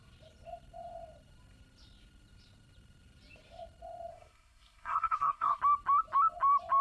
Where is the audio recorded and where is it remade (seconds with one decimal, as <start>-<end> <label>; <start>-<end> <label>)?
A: 0.0-4.1 recorded; 4.1-5.6 remade; 5.6-6.8 recorded